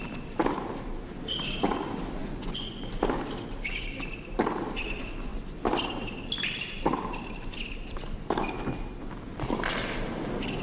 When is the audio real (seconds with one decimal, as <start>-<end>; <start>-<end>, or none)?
0.0-2.2; 2.9-10.6